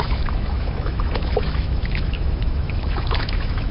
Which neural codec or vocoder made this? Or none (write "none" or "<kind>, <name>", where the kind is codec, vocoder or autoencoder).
autoencoder, DAC-VAE